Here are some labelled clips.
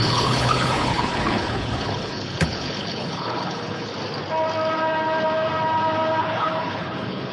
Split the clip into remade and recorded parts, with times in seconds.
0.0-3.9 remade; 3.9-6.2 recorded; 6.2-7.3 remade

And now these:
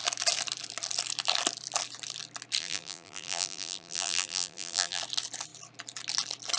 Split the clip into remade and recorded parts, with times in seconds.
0.0-2.6 recorded; 2.6-5.0 remade; 5.0-6.6 recorded

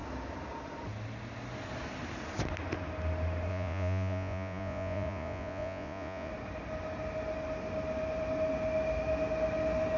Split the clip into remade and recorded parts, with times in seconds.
0.0-3.5 recorded; 3.5-6.3 remade; 6.3-10.0 recorded

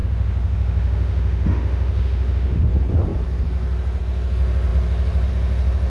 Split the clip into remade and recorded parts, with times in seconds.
0.0-2.7 remade; 2.7-5.9 recorded